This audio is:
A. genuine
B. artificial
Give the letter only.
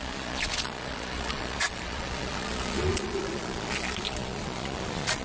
B